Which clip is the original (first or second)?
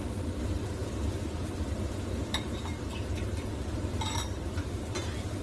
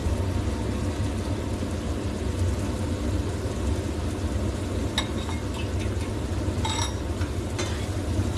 second